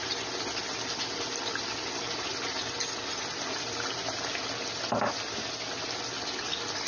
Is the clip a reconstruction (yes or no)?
no